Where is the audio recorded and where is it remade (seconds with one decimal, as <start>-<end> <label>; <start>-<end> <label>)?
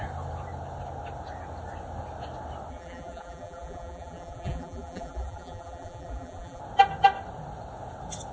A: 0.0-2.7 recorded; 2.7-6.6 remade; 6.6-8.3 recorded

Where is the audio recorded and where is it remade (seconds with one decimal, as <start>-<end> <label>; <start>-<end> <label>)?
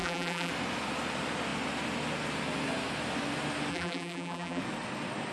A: 0.0-0.5 remade; 0.5-3.7 recorded; 3.7-4.6 remade; 4.6-5.3 recorded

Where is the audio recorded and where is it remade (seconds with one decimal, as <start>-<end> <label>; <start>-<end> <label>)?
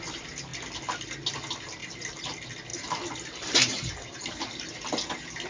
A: 0.0-1.8 recorded; 1.8-2.3 remade; 2.3-2.7 recorded; 2.7-4.6 remade; 4.6-5.5 recorded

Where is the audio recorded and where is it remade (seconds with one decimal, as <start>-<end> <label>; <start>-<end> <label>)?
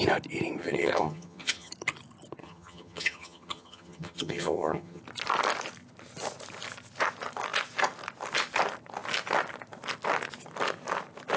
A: 0.0-0.6 recorded; 0.6-1.7 remade; 1.7-2.4 recorded; 2.4-5.0 remade; 5.0-11.4 recorded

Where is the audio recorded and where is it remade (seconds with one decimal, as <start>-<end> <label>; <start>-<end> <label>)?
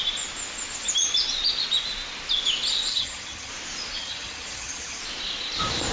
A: 0.0-2.9 recorded; 2.9-3.5 remade; 3.5-4.0 recorded; 4.0-5.0 remade; 5.0-5.9 recorded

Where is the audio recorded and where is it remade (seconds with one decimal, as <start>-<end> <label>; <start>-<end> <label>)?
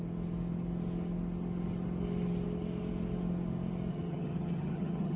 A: 0.0-3.9 recorded; 3.9-5.2 remade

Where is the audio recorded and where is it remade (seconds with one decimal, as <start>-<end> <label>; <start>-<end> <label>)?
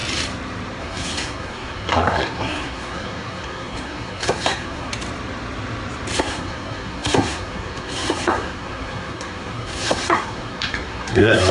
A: 0.0-0.8 recorded; 0.8-4.9 remade; 4.9-6.2 recorded; 6.2-11.5 remade